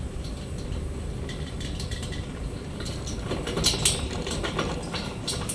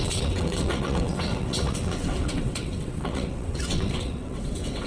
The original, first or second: first